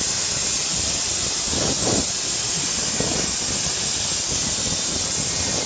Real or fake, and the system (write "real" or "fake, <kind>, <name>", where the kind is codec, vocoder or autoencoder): real